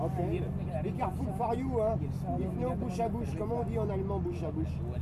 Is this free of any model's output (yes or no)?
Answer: yes